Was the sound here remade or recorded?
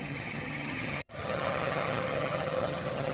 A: remade